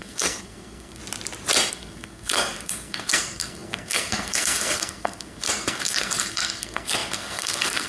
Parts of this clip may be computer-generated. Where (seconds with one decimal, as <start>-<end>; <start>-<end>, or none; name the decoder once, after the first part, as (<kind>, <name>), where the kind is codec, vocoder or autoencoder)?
0.0-1.0 (codec, SNAC); 1.7-7.9